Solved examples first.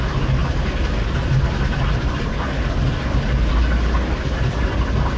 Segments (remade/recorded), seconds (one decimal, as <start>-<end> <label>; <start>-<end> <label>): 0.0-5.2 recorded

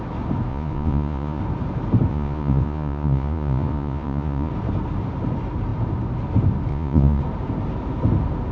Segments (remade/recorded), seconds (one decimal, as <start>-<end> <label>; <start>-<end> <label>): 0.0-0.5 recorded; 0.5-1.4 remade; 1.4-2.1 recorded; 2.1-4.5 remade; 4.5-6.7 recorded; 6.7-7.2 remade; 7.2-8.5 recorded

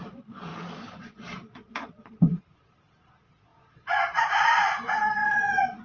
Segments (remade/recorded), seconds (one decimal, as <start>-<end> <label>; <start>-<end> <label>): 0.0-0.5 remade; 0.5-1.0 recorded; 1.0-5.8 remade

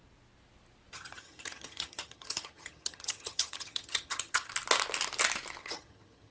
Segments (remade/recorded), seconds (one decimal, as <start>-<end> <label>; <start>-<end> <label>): 0.0-0.9 recorded; 0.9-4.5 remade; 4.5-5.6 recorded; 5.6-6.3 remade